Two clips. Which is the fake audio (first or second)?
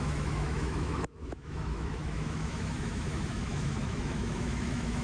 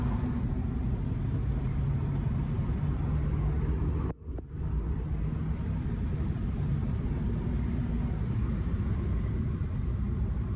first